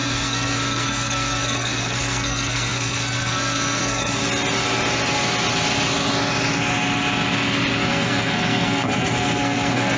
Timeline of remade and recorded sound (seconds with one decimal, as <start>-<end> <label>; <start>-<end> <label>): 0.0-4.2 remade; 4.2-7.9 recorded; 7.9-10.0 remade